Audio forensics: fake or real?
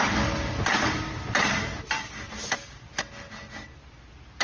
real